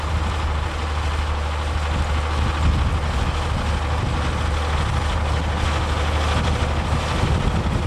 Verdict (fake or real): real